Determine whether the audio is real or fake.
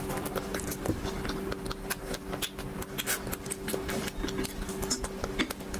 real